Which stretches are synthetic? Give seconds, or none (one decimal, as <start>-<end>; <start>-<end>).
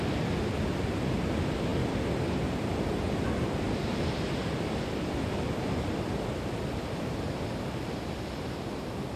none